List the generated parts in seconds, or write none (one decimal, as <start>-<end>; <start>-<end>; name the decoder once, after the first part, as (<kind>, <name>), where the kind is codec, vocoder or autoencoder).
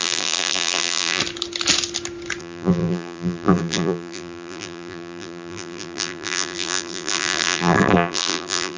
0.0-1.2 (vocoder, BigVGAN v2); 2.4-8.8